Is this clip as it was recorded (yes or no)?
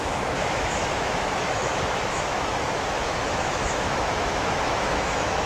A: no